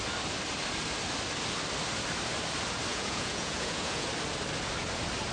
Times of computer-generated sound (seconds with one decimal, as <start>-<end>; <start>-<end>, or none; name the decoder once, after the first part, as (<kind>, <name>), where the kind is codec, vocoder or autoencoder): 2.9-4.1 (vocoder, Vocos)